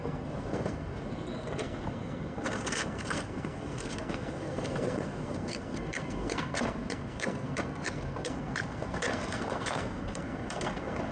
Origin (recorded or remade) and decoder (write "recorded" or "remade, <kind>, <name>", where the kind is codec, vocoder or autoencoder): remade, codec, SNAC